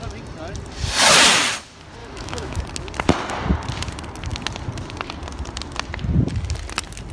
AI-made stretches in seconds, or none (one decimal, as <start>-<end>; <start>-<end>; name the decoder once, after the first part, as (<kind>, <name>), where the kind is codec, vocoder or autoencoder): 2.0-2.6 (autoencoder, DAC-VAE)